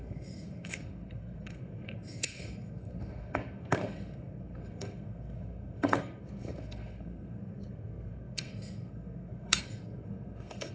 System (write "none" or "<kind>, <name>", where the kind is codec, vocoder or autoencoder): codec, SNAC